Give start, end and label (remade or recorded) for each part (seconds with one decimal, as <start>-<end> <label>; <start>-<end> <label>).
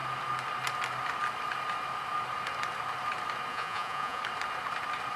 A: 0.0-3.5 recorded; 3.5-4.2 remade; 4.2-5.2 recorded